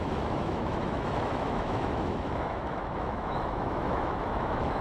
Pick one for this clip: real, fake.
fake